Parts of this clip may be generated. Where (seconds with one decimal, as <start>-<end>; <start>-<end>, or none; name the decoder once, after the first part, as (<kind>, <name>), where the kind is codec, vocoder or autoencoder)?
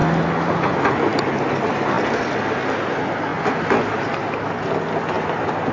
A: none